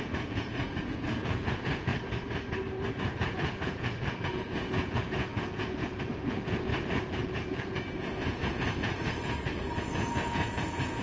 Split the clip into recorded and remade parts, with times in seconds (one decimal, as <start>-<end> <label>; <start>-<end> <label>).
0.0-1.9 remade; 1.9-2.9 recorded; 2.9-11.0 remade